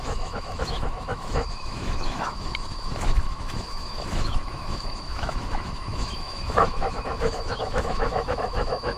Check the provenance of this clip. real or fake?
fake